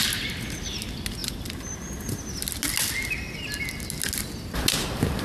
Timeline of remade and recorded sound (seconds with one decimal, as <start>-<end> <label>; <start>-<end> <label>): 0.0-5.2 recorded